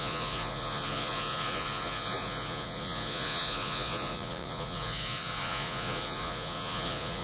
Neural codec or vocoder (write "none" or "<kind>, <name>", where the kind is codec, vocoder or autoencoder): vocoder, Vocos